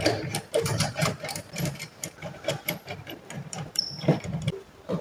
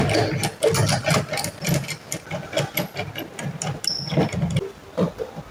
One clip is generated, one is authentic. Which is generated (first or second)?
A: first